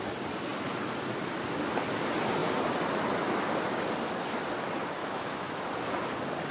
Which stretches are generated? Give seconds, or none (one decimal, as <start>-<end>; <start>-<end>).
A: 5.0-5.6